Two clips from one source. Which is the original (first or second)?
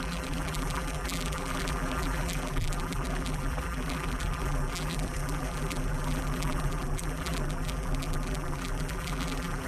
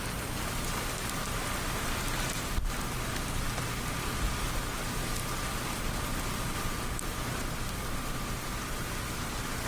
second